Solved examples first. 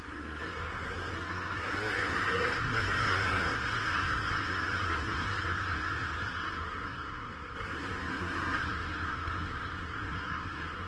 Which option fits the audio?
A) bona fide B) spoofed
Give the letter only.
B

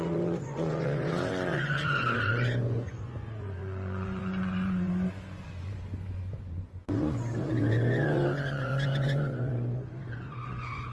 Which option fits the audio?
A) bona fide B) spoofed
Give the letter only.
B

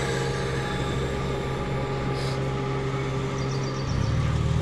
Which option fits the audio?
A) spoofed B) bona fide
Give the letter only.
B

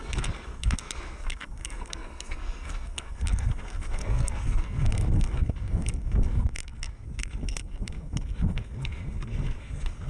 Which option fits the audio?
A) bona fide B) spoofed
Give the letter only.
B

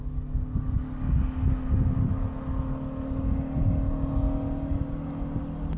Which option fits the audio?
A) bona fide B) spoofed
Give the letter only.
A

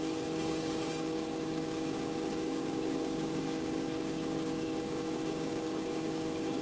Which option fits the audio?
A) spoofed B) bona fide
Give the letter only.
A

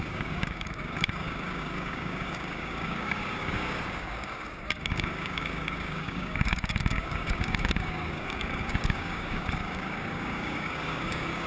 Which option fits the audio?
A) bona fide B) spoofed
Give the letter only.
B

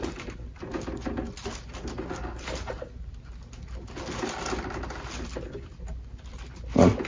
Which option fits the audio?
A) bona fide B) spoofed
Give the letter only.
A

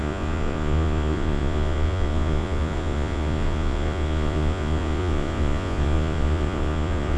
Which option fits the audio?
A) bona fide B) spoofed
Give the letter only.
B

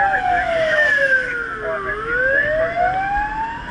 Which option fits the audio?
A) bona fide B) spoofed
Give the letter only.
A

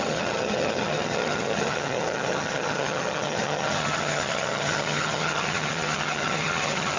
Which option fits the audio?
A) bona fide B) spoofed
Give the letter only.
B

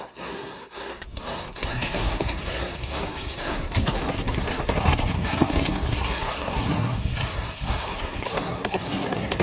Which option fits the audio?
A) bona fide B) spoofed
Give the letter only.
B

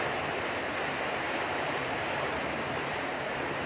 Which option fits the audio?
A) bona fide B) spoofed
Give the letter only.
B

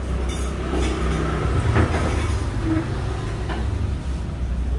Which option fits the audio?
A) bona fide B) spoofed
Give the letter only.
A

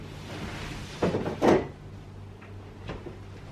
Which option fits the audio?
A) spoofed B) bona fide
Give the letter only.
B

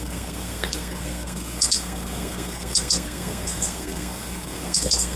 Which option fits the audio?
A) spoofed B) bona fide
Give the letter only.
A